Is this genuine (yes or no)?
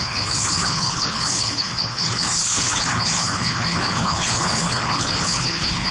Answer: no